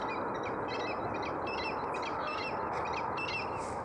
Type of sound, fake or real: real